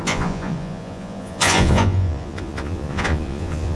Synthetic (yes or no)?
yes